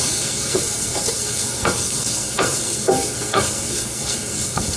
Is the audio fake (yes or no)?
yes